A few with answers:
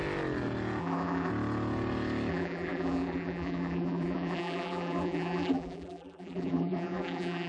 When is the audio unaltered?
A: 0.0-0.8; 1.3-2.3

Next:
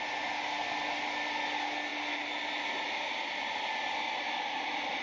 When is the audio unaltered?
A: 0.0-5.0

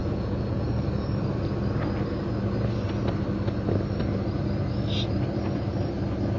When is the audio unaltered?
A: 0.7-6.4

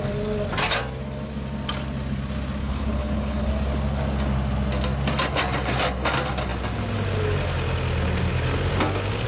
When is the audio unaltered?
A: 0.0-2.6; 3.5-9.3